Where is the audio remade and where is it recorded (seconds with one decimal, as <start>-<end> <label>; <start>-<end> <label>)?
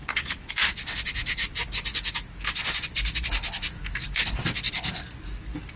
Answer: 0.0-0.5 remade; 0.5-5.8 recorded